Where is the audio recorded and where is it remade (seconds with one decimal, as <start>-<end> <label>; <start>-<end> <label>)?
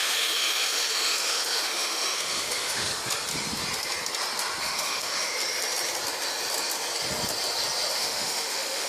0.0-2.9 remade; 2.9-4.6 recorded; 4.6-5.3 remade; 5.3-7.9 recorded; 7.9-8.9 remade